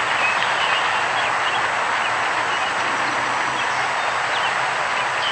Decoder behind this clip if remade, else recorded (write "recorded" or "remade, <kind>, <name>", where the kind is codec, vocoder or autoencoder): recorded